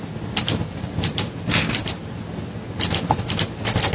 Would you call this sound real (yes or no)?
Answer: yes